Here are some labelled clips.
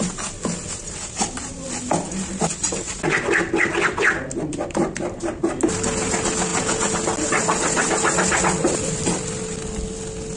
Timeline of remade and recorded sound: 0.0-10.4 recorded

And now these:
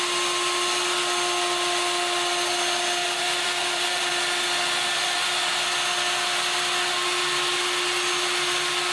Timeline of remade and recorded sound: 0.0-3.0 recorded; 3.0-4.1 remade; 4.1-8.9 recorded

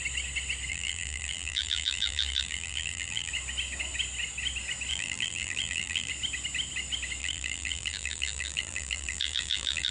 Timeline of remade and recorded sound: 0.0-0.7 recorded; 0.7-3.3 remade; 3.3-4.9 recorded; 4.9-6.1 remade; 6.1-7.2 recorded; 7.2-9.9 remade

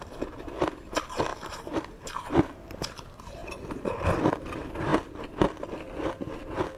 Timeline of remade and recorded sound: 0.0-1.3 recorded; 1.3-2.9 remade; 2.9-6.8 recorded